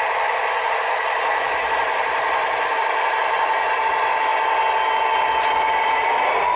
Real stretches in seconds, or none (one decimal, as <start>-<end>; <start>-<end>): 4.3-5.4